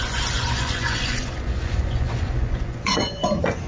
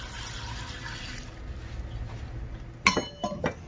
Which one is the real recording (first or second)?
second